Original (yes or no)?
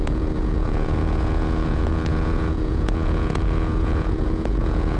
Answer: no